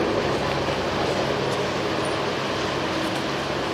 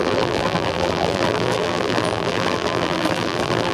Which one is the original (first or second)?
first